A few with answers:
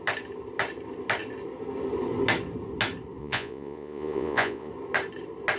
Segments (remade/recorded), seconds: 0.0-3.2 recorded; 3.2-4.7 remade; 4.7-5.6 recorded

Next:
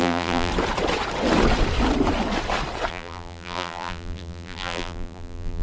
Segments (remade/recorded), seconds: 0.0-0.5 remade; 0.5-2.9 recorded; 2.9-5.6 remade

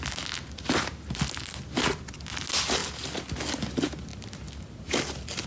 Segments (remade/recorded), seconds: 0.0-5.5 recorded

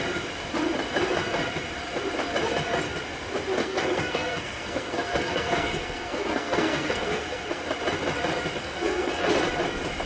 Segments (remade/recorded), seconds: 0.0-3.6 recorded; 3.6-7.6 remade; 7.6-8.6 recorded; 8.6-9.3 remade; 9.3-10.1 recorded